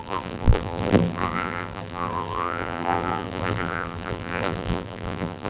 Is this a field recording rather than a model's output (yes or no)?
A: no